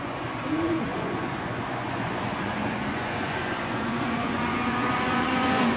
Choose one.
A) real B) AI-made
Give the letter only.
B